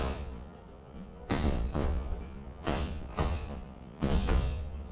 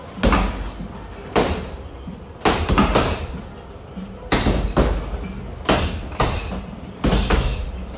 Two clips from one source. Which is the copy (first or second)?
first